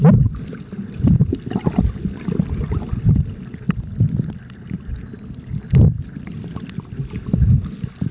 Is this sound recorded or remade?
recorded